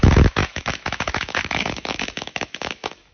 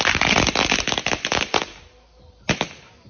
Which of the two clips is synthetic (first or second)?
first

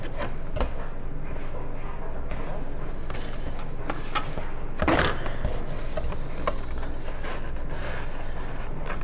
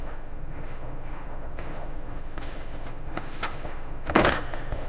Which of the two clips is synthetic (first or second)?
second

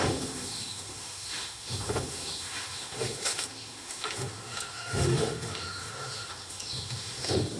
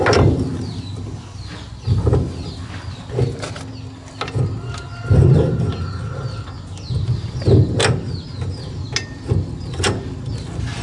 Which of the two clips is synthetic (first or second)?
first